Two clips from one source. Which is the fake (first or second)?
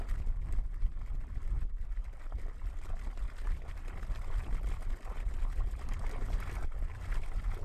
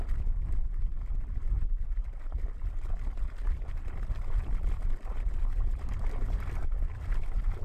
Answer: second